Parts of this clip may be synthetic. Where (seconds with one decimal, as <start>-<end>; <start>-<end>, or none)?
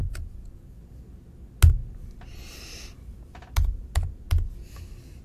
0.0-0.8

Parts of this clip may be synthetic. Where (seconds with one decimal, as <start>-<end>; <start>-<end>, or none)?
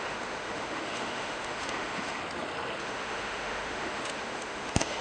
0.0-2.2; 2.8-5.0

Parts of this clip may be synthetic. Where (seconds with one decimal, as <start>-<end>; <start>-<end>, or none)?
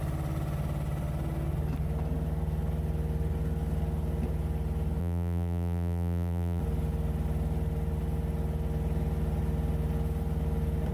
5.0-6.6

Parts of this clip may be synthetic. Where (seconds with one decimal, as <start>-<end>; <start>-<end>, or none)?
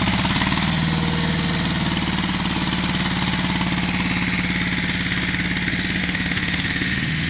6.0-7.3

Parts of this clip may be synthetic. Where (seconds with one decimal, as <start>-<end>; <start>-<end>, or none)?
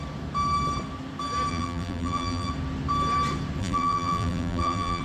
1.5-2.5; 3.6-5.0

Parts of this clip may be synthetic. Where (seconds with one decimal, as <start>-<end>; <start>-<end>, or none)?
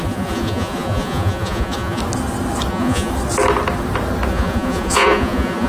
0.0-2.0; 2.7-3.1; 4.3-5.7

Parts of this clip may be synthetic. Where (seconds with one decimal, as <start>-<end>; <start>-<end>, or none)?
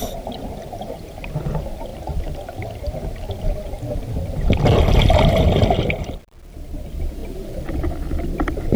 0.0-1.9; 5.6-7.2; 8.2-8.8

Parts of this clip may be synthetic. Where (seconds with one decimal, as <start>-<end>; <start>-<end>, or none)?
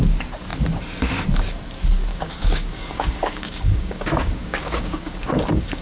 2.1-5.8